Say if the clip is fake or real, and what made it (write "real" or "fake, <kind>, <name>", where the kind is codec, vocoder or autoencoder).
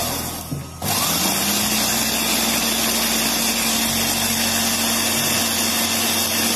real